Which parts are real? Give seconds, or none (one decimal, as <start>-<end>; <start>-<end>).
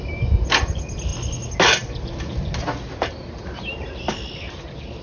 0.0-5.0